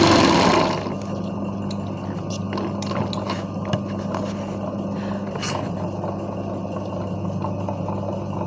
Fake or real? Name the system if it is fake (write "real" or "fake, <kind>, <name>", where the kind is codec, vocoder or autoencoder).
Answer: real